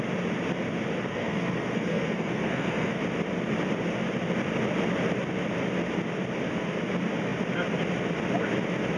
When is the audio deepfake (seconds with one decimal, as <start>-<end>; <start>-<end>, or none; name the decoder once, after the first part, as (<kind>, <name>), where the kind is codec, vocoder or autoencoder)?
1.1-3.0 (codec, SNAC)